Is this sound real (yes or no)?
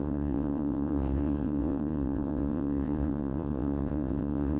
no